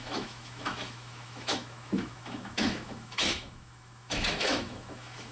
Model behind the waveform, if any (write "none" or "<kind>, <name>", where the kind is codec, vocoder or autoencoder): autoencoder, DAC-VAE